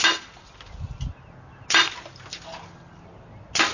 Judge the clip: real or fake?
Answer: real